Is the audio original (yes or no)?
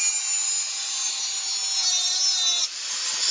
yes